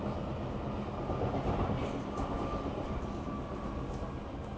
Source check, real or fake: real